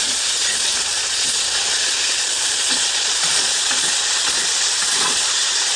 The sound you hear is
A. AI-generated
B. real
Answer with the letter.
A